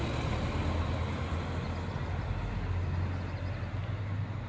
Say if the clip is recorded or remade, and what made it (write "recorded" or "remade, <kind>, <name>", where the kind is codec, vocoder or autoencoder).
recorded